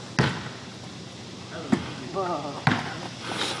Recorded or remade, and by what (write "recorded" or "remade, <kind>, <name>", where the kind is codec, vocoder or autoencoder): recorded